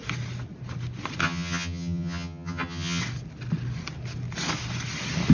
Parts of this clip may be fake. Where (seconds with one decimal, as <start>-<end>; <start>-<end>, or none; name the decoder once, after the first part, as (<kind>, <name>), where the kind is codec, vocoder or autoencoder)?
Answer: 1.2-3.0 (vocoder, HiFi-GAN)

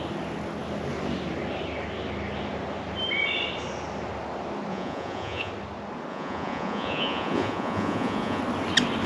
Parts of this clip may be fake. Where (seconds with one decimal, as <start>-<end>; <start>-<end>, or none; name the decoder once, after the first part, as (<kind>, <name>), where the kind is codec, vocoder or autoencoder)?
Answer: 4.7-5.5 (vocoder, Vocos); 6.1-8.4

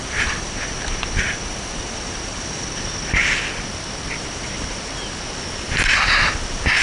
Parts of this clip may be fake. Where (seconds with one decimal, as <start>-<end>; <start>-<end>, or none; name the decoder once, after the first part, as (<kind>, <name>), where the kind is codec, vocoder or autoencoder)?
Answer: none

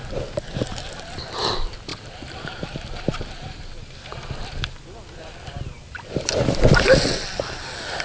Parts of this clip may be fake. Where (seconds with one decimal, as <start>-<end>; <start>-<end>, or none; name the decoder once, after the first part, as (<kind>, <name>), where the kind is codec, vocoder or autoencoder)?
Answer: none

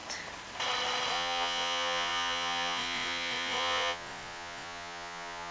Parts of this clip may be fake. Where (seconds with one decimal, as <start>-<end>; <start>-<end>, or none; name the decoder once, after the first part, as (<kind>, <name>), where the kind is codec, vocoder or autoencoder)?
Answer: 1.1-5.5 (vocoder, Vocos)

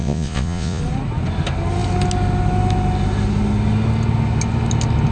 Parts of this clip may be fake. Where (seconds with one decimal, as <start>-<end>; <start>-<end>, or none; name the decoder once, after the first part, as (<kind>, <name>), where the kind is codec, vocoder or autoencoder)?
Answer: 0.0-0.8 (vocoder, Vocos)